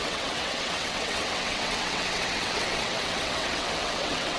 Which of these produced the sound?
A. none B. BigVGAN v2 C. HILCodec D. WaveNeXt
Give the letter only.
D